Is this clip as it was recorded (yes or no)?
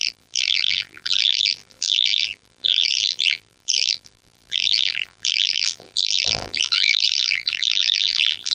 no